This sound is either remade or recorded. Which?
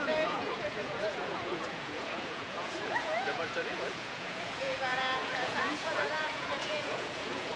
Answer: remade